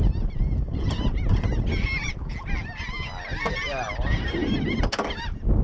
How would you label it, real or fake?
real